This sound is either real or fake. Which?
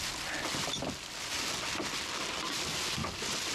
real